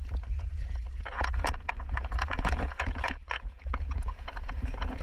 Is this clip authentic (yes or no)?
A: no